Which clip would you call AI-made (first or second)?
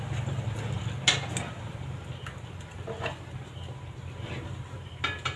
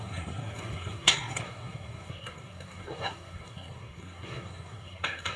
second